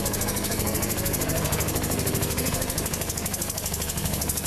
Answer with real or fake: fake